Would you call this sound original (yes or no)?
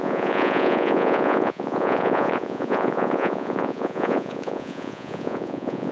no